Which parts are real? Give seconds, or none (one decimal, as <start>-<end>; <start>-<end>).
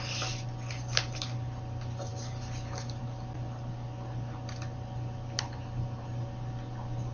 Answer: 0.0-7.1